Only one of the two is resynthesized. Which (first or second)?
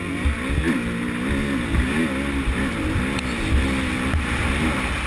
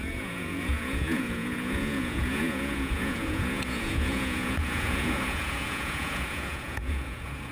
second